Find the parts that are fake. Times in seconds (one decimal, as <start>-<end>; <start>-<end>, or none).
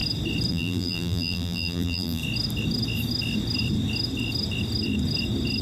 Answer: 0.5-2.2